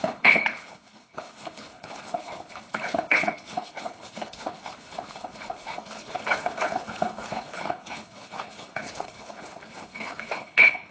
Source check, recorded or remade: remade